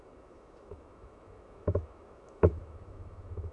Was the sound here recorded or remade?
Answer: remade